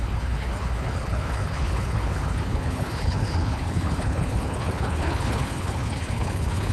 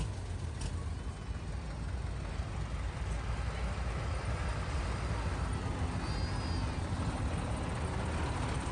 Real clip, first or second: second